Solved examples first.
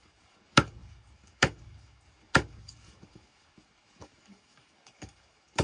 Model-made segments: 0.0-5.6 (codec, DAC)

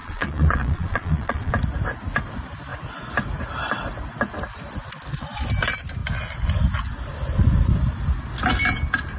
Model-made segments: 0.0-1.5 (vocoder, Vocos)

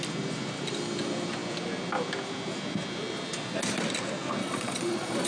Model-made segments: 4.4-5.3 (vocoder, Vocos)

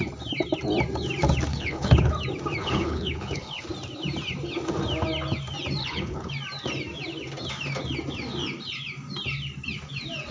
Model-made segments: 1.5-2.1 (codec, HILCodec); 2.6-3.6; 5.8-6.3

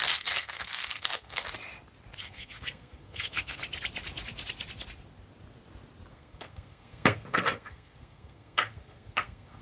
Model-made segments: 0.0-1.4 (codec, SNAC); 2.2-3.6; 6.1-9.6